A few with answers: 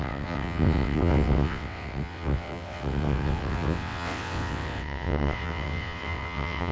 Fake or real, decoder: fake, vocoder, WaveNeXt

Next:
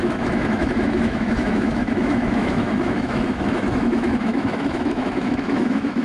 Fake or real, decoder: fake, autoencoder, DAC-VAE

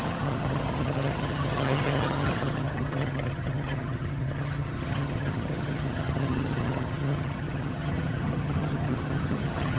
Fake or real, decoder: fake, vocoder, HiFi-GAN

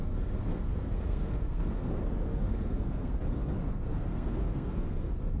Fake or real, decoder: fake, codec, SNAC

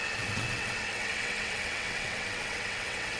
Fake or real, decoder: fake, vocoder, WaveNeXt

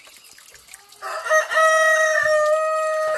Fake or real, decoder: real